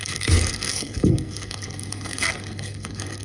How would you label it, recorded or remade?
remade